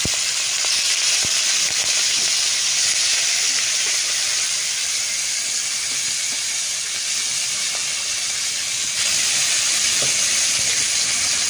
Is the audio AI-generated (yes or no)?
no